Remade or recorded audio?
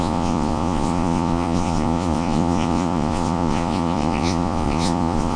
remade